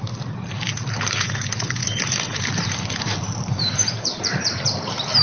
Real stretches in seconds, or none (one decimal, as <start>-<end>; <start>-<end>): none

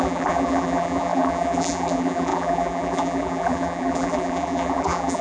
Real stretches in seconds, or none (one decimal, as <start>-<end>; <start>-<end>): none

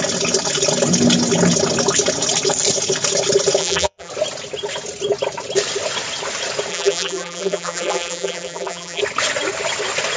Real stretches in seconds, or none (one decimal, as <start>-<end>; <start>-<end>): 0.0-3.6; 4.1-6.7; 9.0-10.2

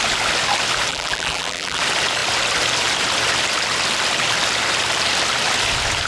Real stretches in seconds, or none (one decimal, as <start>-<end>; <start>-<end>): 0.0-0.9; 1.8-6.1

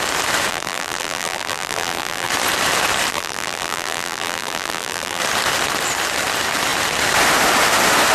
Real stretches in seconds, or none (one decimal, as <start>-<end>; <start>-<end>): 0.0-0.5; 2.3-3.1; 5.2-8.1